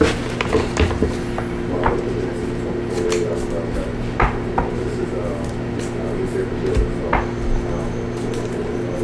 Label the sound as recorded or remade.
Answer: recorded